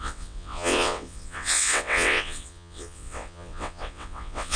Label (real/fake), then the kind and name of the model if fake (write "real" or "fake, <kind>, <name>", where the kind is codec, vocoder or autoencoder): fake, vocoder, WaveNeXt